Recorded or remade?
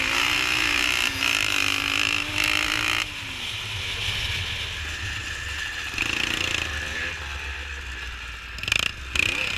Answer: recorded